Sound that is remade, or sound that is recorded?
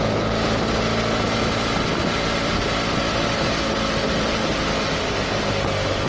recorded